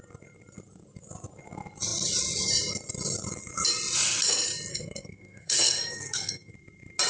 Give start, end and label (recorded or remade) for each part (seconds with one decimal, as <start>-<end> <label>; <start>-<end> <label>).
0.0-4.7 recorded; 4.7-6.5 remade; 6.5-7.1 recorded